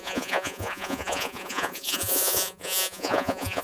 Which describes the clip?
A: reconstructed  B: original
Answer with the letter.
A